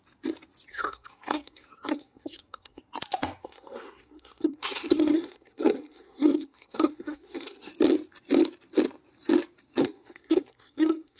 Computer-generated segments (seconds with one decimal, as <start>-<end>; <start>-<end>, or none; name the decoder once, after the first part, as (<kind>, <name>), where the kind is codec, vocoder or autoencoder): 0.7-2.8 (codec, SNAC); 3.4-7.7; 9.8-11.2